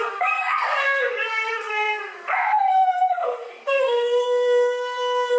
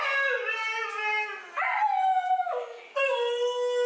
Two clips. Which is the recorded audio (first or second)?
second